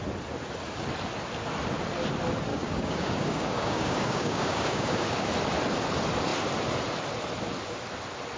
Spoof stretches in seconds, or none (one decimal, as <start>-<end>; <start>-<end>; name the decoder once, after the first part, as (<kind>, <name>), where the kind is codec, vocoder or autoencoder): 2.5-5.3 (codec, DAC)